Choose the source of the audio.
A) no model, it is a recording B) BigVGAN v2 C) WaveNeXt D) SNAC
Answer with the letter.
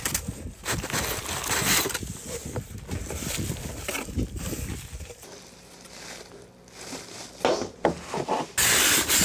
A